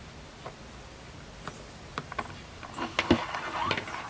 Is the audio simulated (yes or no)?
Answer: no